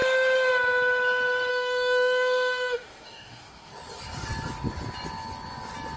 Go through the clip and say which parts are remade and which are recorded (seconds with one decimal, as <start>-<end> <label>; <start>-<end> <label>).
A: 0.0-1.5 recorded; 1.5-3.7 remade; 3.7-6.0 recorded